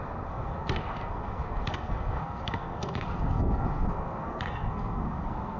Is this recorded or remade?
remade